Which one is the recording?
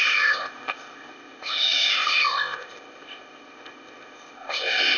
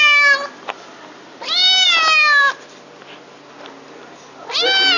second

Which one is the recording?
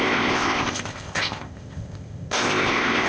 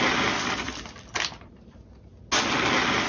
second